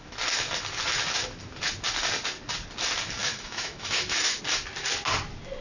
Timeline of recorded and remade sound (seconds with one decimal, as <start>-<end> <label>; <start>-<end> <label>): 0.0-3.2 recorded; 3.2-4.4 remade; 4.4-5.6 recorded